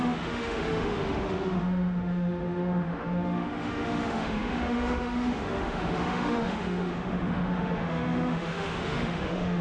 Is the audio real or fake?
fake